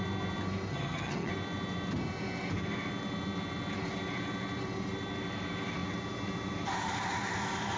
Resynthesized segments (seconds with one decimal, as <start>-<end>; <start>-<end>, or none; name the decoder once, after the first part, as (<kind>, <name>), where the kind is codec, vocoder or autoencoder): 0.7-1.3 (vocoder, HiFi-GAN)